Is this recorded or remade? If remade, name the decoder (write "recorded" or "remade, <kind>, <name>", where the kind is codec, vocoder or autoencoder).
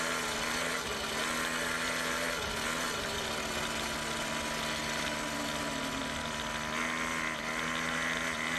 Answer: recorded